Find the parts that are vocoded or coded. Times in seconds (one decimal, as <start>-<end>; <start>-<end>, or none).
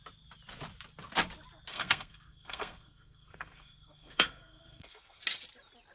1.7-5.2